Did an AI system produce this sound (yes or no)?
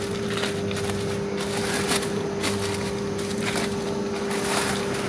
no